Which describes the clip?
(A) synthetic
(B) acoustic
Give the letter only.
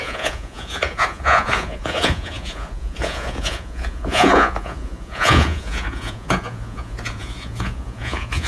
A